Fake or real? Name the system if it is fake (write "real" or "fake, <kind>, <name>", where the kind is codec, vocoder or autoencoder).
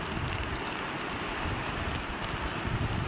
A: real